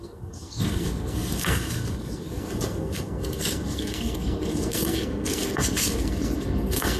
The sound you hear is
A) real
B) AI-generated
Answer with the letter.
B